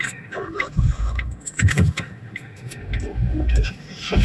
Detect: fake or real fake